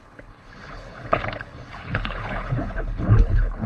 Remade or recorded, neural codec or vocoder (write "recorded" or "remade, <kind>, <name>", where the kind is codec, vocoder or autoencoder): remade, codec, HILCodec